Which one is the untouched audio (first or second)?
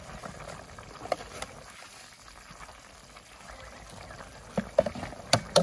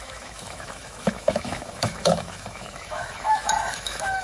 first